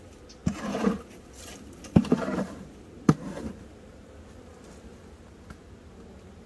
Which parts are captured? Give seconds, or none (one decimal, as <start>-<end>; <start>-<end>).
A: 0.0-6.5